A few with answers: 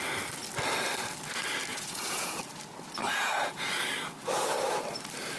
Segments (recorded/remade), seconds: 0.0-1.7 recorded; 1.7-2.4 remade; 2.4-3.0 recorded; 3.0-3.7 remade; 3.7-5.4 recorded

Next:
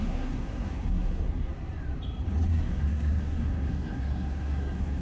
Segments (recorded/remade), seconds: 0.0-1.5 remade; 1.5-2.5 recorded; 2.5-5.0 remade

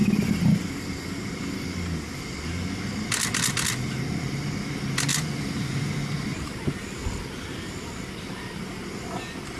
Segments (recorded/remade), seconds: 0.0-5.1 recorded; 5.1-7.0 remade; 7.0-9.6 recorded

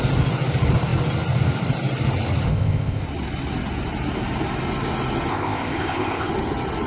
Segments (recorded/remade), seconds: 0.0-2.5 recorded; 2.5-3.0 remade; 3.0-5.3 recorded; 5.3-6.3 remade; 6.3-6.9 recorded

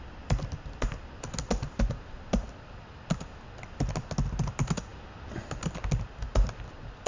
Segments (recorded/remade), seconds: 0.0-7.1 recorded